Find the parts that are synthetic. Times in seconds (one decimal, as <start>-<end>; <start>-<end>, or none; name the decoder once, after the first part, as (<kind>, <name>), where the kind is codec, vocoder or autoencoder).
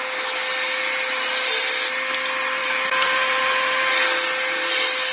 2.6-3.9 (vocoder, BigVGAN v2)